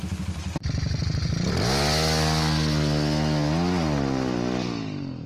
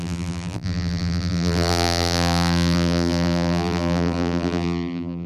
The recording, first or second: first